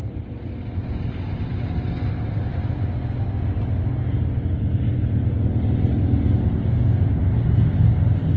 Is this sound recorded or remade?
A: recorded